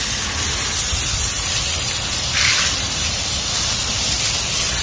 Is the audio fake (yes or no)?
no